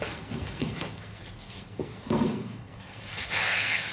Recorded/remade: remade